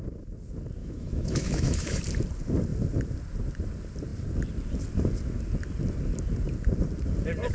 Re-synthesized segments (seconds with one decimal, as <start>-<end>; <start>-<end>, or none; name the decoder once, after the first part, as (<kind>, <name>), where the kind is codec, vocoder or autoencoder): 0.8-2.0 (autoencoder, DAC-VAE)